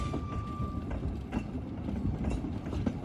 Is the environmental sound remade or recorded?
recorded